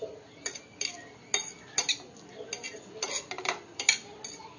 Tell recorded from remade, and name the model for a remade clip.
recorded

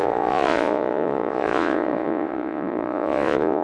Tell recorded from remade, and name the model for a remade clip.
remade, vocoder, Vocos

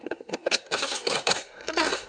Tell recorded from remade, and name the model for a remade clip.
remade, codec, SNAC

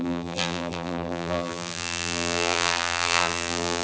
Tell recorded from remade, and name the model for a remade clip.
remade, vocoder, BigVGAN v2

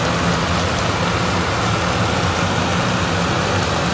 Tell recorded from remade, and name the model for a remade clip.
recorded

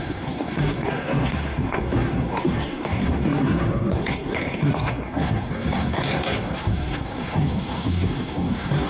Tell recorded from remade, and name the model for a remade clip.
remade, codec, SNAC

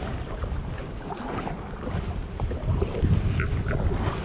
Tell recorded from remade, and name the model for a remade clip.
recorded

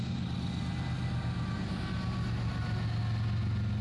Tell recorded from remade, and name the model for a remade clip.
recorded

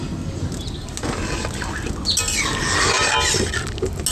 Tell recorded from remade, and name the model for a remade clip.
recorded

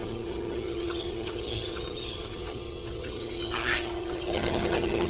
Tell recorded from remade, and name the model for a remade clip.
remade, vocoder, HiFi-GAN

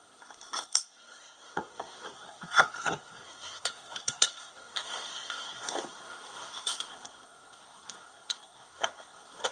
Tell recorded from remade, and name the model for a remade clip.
remade, codec, SNAC